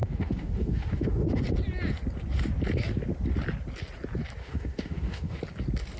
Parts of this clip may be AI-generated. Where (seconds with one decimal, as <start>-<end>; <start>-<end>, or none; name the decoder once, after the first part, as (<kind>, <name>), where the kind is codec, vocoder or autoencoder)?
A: 0.0-1.4 (autoencoder, DAC-VAE); 4.4-5.4